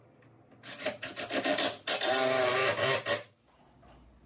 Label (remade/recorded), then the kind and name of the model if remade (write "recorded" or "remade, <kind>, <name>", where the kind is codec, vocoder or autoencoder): recorded